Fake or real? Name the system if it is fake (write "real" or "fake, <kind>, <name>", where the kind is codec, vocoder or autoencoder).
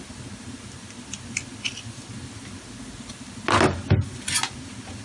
real